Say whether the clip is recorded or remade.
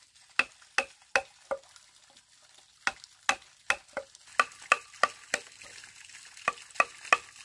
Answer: recorded